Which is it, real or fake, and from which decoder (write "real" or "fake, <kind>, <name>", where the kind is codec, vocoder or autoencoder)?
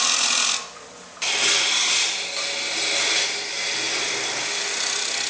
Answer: real